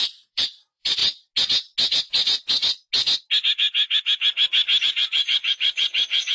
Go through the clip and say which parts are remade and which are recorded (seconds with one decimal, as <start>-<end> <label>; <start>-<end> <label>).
0.0-1.0 remade; 1.0-4.8 recorded; 4.8-6.3 remade

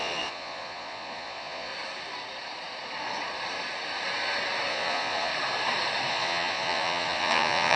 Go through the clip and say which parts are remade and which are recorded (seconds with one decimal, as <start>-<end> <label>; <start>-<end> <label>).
0.0-1.7 remade; 1.7-4.7 recorded; 4.7-5.3 remade; 5.3-6.1 recorded; 6.1-7.8 remade

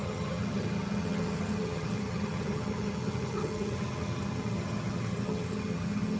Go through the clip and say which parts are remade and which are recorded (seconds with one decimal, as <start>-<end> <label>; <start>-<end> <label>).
0.0-6.2 remade

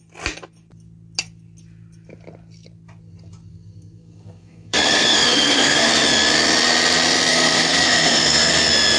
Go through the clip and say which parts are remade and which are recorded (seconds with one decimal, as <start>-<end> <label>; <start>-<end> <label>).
0.0-3.5 recorded; 3.5-5.9 remade; 5.9-7.3 recorded; 7.3-8.5 remade; 8.5-9.0 recorded